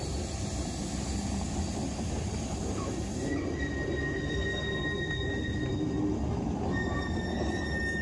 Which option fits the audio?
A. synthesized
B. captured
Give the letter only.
B